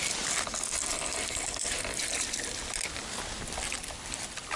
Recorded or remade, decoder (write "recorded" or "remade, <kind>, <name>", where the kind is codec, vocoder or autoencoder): recorded